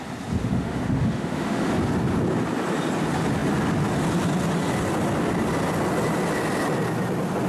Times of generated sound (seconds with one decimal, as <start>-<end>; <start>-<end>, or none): 0.4-1.7